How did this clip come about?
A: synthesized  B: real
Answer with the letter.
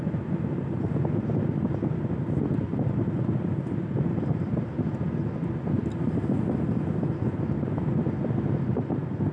B